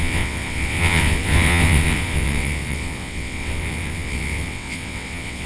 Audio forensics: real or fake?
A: fake